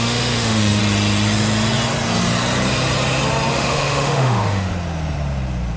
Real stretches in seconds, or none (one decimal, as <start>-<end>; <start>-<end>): 0.8-3.5; 4.7-5.8

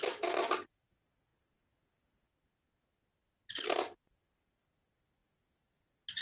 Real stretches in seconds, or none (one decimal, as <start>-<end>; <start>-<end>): 0.0-6.2